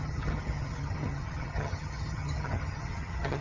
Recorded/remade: remade